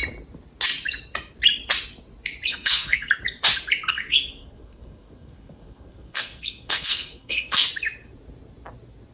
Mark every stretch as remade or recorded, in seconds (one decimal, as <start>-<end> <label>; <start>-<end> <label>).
0.0-2.5 recorded; 2.5-3.1 remade; 3.1-3.9 recorded; 3.9-7.7 remade; 7.7-9.1 recorded